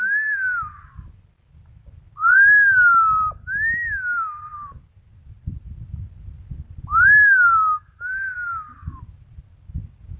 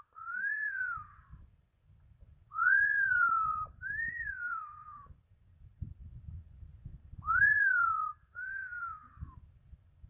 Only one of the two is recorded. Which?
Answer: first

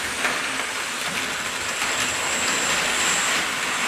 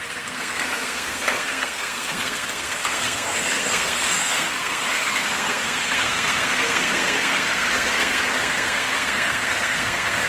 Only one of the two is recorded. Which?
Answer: first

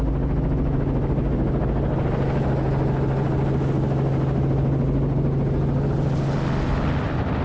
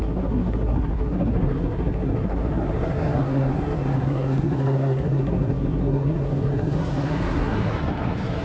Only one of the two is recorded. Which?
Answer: first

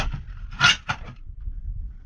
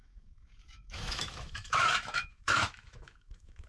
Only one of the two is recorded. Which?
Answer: first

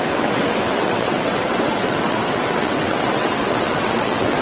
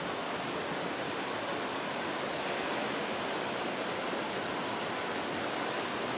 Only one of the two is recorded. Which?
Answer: second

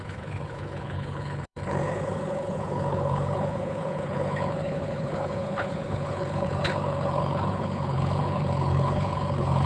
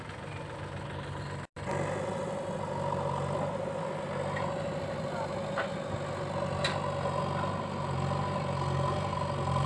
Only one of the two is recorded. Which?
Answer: second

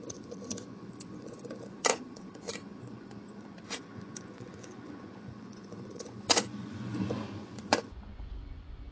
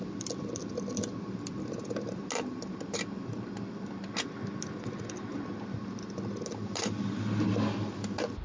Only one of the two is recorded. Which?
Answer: second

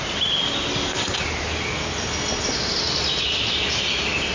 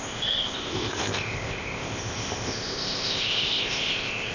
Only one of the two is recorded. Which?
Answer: first